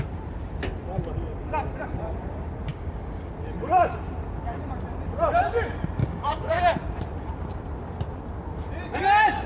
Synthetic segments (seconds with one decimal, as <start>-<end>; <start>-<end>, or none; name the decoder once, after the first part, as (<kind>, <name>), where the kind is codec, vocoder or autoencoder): 2.7-3.3 (codec, DAC); 6.0-6.6